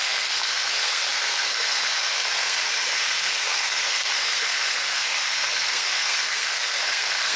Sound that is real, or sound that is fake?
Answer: fake